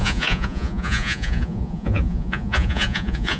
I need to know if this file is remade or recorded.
remade